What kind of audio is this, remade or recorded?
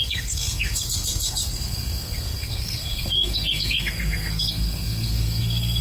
remade